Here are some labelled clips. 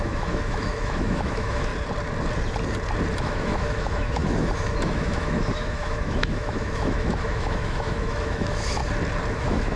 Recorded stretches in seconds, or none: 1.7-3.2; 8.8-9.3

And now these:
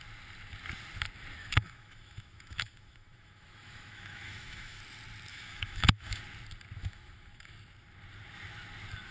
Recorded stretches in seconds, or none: 0.0-1.4; 4.8-5.3; 6.2-6.8; 7.5-9.1

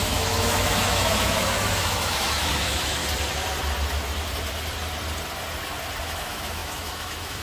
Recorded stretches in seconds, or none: 3.0-6.0

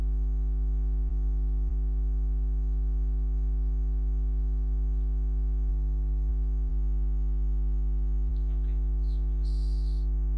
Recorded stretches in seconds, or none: 0.0-1.1; 1.7-5.7; 6.3-10.4